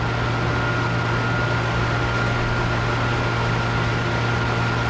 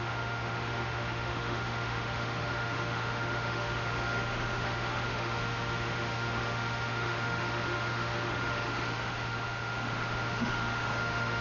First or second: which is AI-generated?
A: second